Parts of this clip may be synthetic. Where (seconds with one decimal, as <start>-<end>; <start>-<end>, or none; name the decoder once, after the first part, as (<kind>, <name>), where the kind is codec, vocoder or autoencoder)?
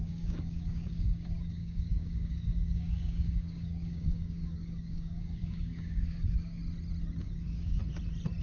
0.0-6.6 (codec, DAC); 7.2-7.8